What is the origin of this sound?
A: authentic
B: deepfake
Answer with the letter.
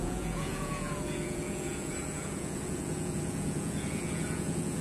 B